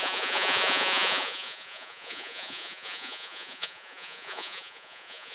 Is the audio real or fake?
fake